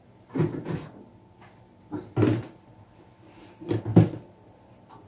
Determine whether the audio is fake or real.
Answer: real